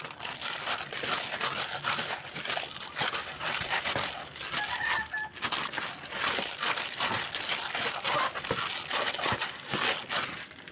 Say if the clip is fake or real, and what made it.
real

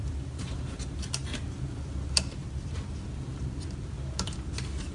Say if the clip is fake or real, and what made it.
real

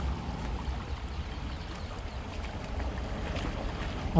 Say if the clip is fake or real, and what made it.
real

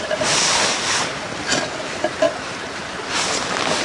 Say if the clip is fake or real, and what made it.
real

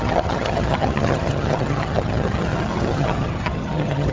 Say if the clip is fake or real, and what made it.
fake, vocoder, HiFi-GAN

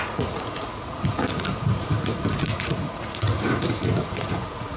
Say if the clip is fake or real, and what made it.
fake, vocoder, Vocos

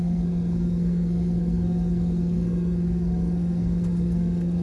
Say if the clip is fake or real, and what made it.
fake, codec, SNAC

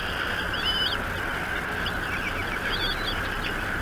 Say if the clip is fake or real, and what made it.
real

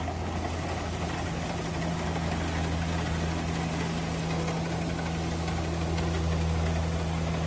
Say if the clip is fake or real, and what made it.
real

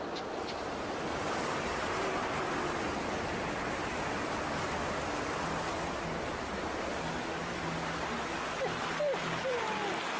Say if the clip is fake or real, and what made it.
real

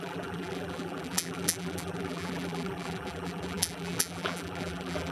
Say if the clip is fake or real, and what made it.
fake, vocoder, BigVGAN v2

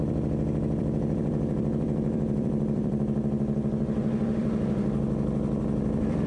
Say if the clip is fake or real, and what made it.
fake, vocoder, BigVGAN v2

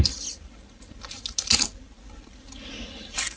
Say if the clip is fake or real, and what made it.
real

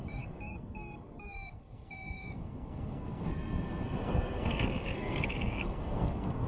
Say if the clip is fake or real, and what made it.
fake, codec, SNAC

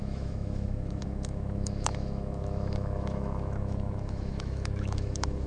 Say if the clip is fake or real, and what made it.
fake, autoencoder, DAC-VAE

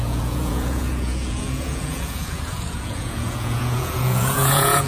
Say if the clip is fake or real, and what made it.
fake, vocoder, Vocos